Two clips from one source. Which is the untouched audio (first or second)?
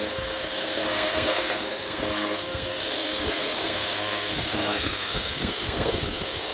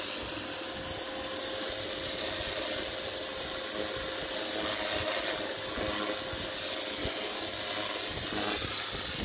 second